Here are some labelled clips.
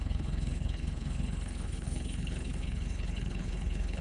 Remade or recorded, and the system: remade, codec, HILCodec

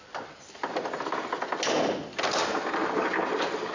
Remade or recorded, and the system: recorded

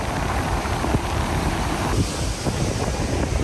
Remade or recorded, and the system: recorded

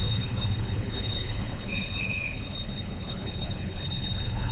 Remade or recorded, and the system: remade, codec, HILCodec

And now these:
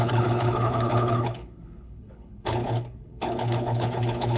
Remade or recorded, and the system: remade, codec, HILCodec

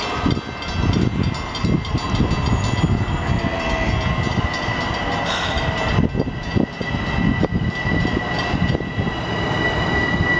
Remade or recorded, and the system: recorded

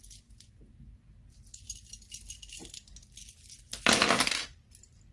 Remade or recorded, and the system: recorded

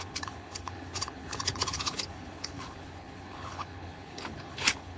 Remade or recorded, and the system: remade, codec, HILCodec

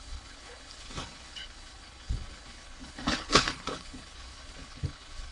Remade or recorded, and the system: remade, codec, HILCodec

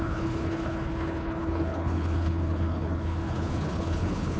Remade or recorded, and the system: remade, codec, HILCodec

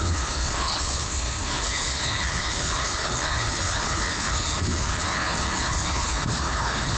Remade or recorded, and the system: remade, codec, HILCodec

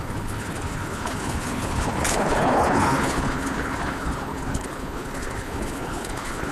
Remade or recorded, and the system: remade, codec, HILCodec